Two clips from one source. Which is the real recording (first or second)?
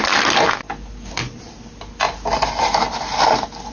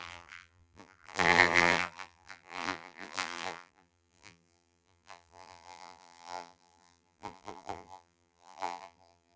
first